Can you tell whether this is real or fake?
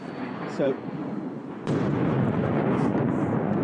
fake